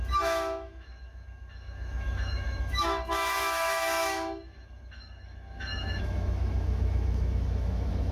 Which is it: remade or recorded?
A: remade